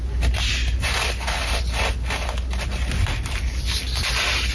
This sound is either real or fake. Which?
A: real